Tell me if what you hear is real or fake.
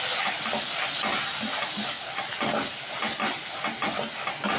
real